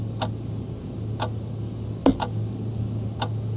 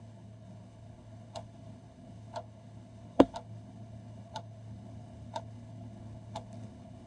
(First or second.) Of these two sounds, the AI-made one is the second